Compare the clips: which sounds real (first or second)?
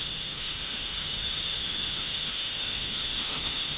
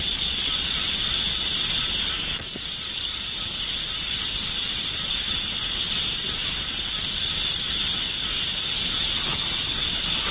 second